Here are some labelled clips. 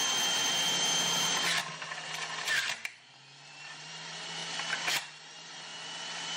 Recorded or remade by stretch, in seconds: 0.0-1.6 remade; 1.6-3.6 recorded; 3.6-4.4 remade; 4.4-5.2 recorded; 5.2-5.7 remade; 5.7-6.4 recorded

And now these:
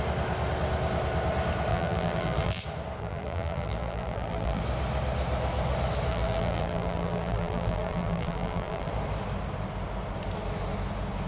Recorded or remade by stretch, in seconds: 0.0-1.7 recorded; 1.7-2.6 remade; 2.6-3.0 recorded; 3.0-4.6 remade; 4.6-6.1 recorded; 6.1-8.9 remade; 8.9-11.3 recorded

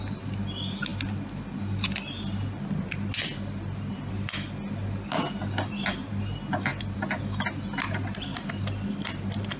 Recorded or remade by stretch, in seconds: 0.0-6.7 recorded; 6.7-7.2 remade; 7.2-9.6 recorded

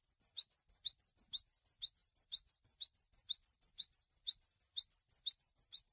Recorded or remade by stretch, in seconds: 0.0-2.0 recorded; 2.0-5.5 remade; 5.5-5.9 recorded

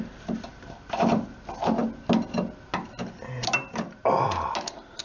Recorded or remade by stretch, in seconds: 0.0-0.5 recorded; 0.5-1.3 remade; 1.3-5.0 recorded

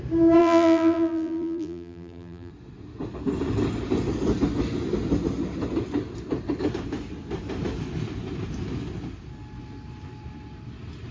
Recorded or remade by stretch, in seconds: 0.0-0.4 recorded; 0.4-2.5 remade; 2.5-11.1 recorded